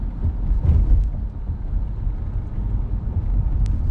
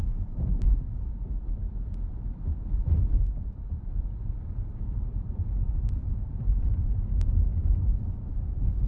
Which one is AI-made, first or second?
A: second